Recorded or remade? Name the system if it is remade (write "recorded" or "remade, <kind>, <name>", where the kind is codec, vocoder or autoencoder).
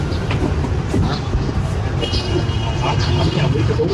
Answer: remade, vocoder, BigVGAN v2